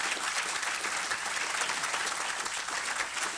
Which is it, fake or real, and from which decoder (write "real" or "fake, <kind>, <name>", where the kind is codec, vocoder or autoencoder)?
real